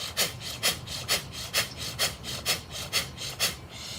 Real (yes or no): yes